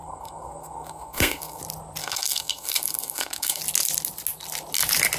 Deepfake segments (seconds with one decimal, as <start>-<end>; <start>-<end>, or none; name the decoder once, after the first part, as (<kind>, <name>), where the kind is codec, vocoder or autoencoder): 0.0-1.6 (codec, SNAC); 2.0-3.6